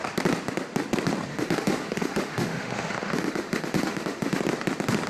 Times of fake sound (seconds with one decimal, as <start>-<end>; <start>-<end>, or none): 1.3-4.4